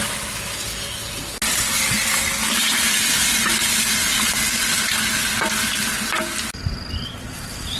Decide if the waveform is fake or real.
real